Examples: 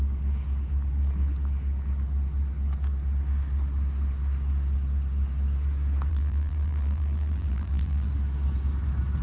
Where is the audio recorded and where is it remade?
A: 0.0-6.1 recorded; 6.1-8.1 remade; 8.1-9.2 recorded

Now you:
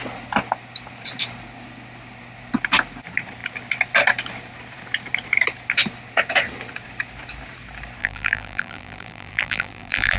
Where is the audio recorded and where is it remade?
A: 0.0-8.0 recorded; 8.0-10.2 remade

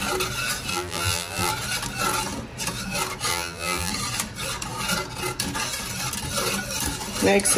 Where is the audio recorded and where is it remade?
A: 0.0-0.7 recorded; 0.7-1.5 remade; 1.5-3.3 recorded; 3.3-3.9 remade; 3.9-7.6 recorded

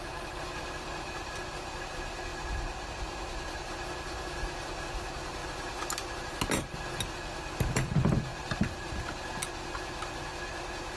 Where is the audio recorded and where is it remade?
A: 0.0-11.0 recorded

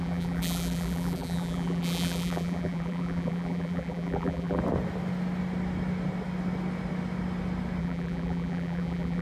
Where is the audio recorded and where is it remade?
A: 0.0-4.6 remade; 4.6-7.8 recorded; 7.8-9.2 remade